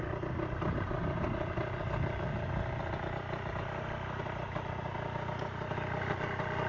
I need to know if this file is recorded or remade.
recorded